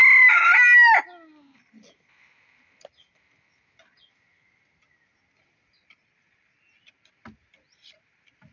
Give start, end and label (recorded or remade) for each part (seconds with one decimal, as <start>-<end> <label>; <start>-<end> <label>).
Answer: 0.0-8.5 recorded